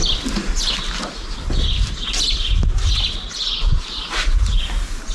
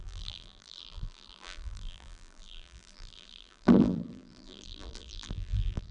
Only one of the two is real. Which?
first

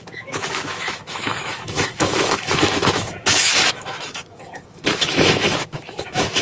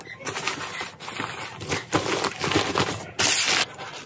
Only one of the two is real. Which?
second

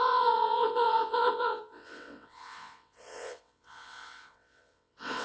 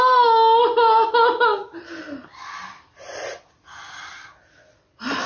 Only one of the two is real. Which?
second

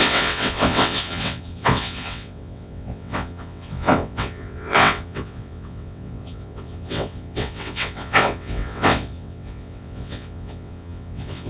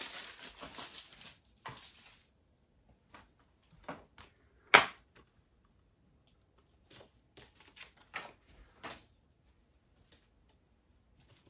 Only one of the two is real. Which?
second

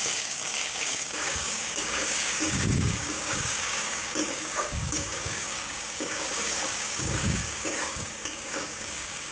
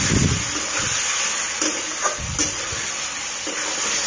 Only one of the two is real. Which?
second